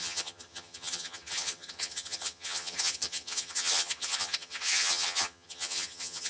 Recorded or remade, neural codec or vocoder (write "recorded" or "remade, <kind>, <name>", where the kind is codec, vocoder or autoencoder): remade, vocoder, HiFi-GAN